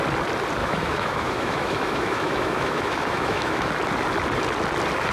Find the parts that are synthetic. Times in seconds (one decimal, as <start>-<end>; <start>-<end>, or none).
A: 0.6-3.7